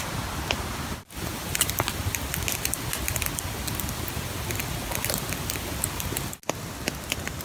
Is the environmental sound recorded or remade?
recorded